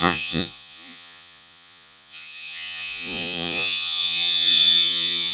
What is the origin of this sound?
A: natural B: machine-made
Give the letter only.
B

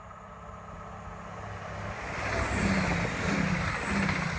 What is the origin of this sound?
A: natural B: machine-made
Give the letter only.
A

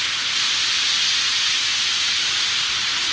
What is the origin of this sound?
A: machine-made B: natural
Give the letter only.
B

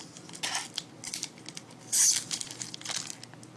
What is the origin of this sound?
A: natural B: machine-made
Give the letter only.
A